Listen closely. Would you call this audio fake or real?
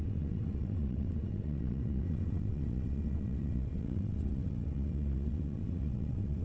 fake